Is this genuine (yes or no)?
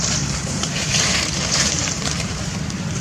no